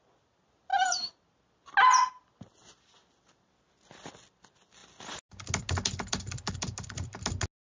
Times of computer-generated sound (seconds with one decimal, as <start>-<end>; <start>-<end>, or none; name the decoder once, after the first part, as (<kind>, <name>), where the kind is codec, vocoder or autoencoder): none

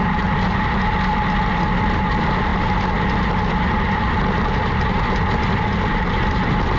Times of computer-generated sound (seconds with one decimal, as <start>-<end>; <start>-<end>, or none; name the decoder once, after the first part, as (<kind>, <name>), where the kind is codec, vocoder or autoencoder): none

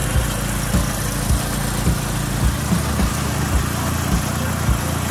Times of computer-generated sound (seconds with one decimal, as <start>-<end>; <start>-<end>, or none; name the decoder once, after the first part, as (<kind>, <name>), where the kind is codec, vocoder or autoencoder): none

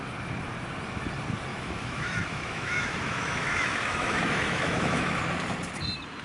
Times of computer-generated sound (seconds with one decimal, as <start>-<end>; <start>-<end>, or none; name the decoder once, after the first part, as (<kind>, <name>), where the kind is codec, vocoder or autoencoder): 1.5-5.2 (autoencoder, DAC-VAE)

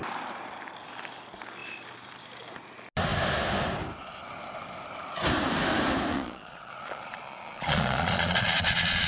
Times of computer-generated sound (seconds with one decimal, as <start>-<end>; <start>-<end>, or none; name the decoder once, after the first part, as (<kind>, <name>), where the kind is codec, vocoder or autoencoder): 6.1-9.1 (vocoder, Vocos)

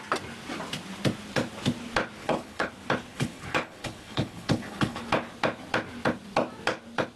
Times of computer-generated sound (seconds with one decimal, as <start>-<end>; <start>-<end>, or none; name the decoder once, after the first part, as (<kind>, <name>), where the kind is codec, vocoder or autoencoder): 2.2-2.7 (codec, HILCodec); 3.1-5.0